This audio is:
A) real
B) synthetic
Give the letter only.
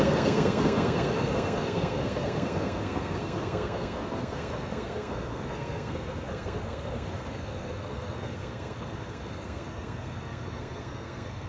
B